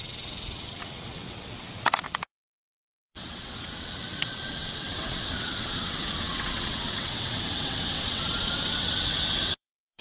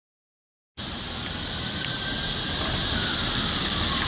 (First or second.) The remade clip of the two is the first